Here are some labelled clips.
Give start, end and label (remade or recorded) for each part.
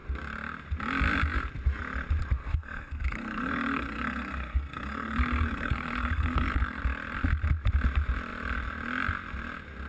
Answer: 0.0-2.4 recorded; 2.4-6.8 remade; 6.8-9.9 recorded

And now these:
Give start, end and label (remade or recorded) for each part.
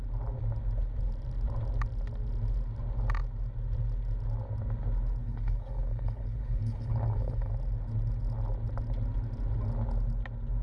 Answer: 0.0-5.2 recorded; 5.2-7.5 remade; 7.5-10.6 recorded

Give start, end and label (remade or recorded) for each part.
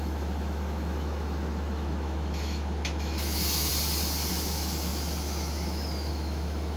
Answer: 0.0-3.7 remade; 3.7-4.3 recorded; 4.3-6.8 remade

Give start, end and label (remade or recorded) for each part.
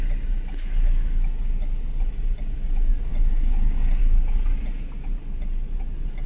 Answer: 0.0-6.3 recorded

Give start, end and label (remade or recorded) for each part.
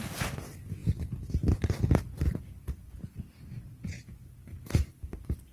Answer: 0.0-5.5 remade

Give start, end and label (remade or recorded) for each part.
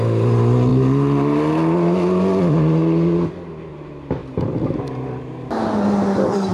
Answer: 0.0-6.5 recorded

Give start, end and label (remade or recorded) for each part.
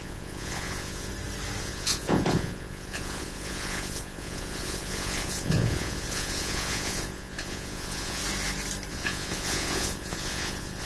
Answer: 0.0-1.1 remade; 1.1-1.6 recorded; 1.6-8.2 remade; 8.2-8.9 recorded; 8.9-10.9 remade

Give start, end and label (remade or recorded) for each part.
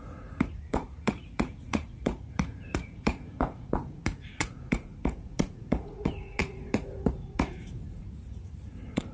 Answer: 0.0-9.1 remade